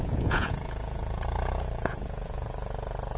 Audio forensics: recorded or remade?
remade